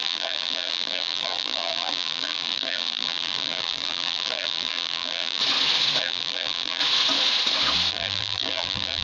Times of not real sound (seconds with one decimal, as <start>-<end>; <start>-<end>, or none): 0.0-5.4; 6.0-6.8; 7.9-9.0